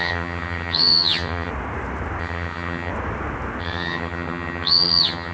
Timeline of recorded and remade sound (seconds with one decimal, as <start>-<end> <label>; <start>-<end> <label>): 0.0-1.5 remade; 1.5-2.2 recorded; 2.2-2.9 remade; 2.9-3.6 recorded; 3.6-5.3 remade

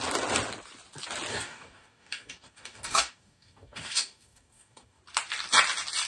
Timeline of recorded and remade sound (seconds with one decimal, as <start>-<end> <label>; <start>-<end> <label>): 0.0-1.3 recorded; 1.3-5.0 remade; 5.0-6.1 recorded

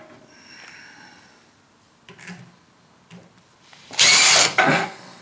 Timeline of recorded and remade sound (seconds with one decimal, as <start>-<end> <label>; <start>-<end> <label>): 0.0-4.4 recorded; 4.4-5.2 remade

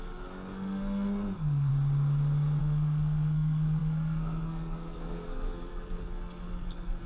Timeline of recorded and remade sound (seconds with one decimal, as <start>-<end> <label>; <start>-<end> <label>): 0.0-1.7 remade; 1.7-2.6 recorded; 2.6-7.1 remade

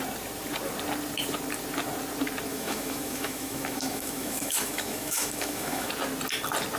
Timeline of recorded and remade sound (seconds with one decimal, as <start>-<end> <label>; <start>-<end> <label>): 0.0-2.5 recorded; 2.5-5.9 remade; 5.9-6.8 recorded